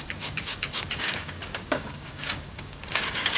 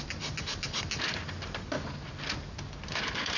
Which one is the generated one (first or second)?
first